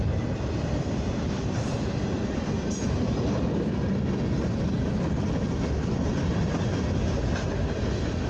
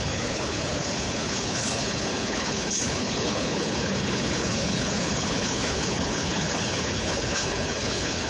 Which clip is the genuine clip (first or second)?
first